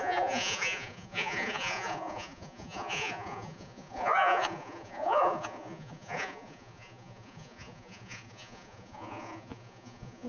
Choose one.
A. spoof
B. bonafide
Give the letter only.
A